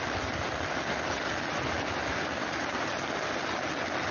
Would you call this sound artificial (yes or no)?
no